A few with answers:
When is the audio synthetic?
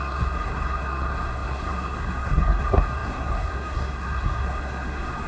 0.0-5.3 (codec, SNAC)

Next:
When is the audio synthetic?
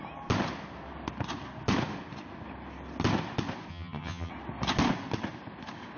3.7-4.3 (vocoder, HiFi-GAN)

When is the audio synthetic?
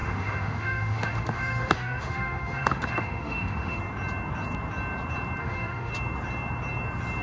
0.0-3.8 (autoencoder, DAC-VAE); 5.4-5.9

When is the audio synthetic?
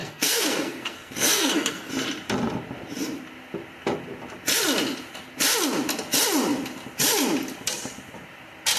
0.0-1.9 (codec, SNAC)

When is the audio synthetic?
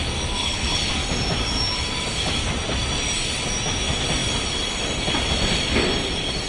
0.4-0.9 (codec, HILCodec)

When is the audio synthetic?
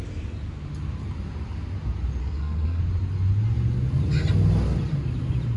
2.2-2.8 (codec, SNAC)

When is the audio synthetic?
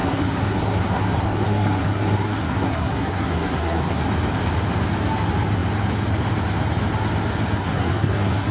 0.0-4.0 (codec, SNAC); 7.6-8.5